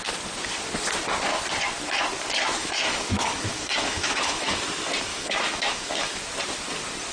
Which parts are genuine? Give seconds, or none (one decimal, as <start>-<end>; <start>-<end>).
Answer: 0.0-2.6; 4.6-5.1; 6.2-7.1